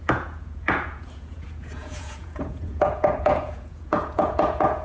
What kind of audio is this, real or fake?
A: fake